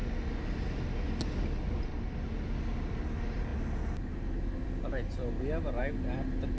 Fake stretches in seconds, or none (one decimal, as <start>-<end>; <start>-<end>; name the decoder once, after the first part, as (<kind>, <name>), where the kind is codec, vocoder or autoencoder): none